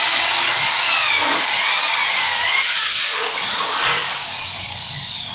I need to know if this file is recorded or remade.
remade